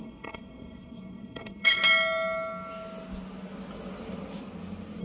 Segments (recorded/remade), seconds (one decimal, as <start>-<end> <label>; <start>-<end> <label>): 0.0-1.8 remade; 1.8-5.0 recorded